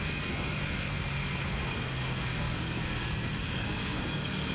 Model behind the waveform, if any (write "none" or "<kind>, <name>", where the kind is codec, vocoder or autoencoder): codec, SNAC